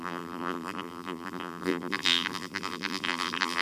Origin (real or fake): fake